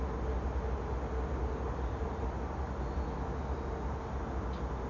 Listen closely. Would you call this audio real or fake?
real